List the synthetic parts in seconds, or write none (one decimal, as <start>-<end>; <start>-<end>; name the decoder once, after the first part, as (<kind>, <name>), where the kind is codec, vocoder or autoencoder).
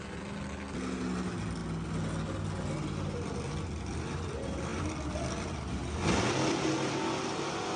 none